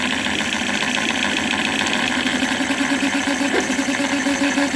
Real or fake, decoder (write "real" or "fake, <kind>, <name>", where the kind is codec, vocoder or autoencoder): real